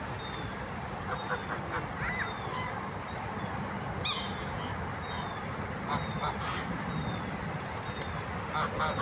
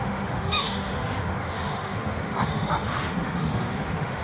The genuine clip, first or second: first